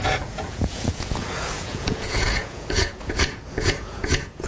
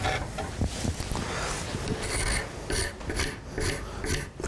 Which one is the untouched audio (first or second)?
second